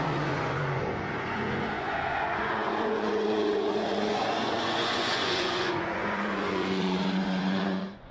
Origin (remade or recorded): remade